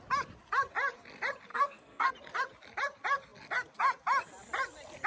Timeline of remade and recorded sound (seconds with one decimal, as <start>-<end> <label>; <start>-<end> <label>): 0.0-1.5 recorded; 1.5-2.1 remade; 2.1-5.1 recorded